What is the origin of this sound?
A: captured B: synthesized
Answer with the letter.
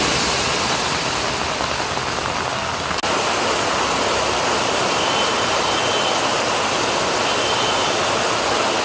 A